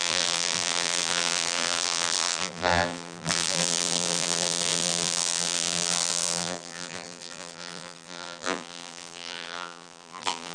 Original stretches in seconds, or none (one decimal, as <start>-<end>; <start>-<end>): none